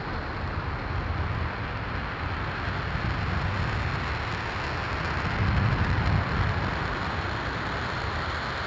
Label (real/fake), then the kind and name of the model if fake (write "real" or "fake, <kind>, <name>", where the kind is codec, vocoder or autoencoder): real